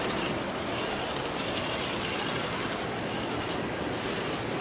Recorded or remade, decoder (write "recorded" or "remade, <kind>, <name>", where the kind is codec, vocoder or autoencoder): recorded